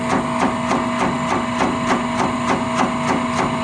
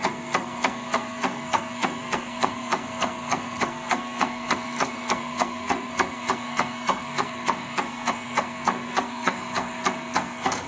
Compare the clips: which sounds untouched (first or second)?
first